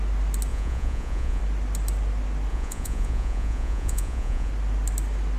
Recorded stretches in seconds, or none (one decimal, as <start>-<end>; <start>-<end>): 0.0-0.5; 1.4-2.5; 4.5-5.4